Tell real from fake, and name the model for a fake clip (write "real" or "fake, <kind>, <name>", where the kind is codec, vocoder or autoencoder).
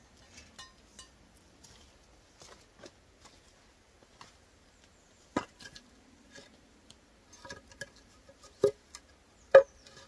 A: real